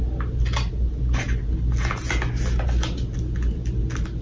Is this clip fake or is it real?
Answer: real